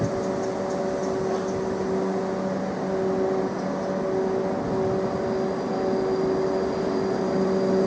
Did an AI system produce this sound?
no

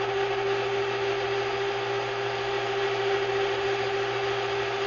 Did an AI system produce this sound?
no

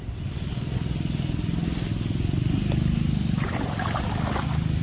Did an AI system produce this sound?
no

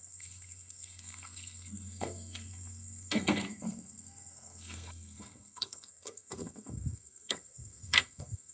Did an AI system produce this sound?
yes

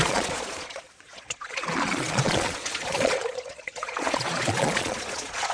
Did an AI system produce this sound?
yes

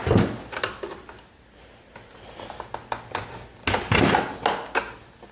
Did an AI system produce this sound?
no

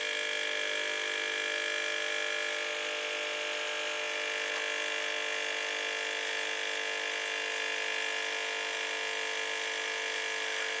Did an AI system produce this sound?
no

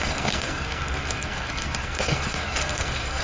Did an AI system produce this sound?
yes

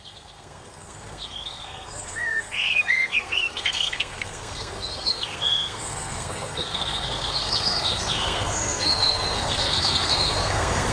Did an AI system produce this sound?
yes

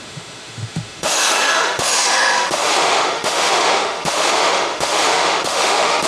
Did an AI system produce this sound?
yes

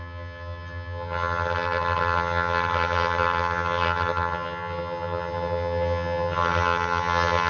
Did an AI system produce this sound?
yes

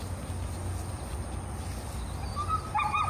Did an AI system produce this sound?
no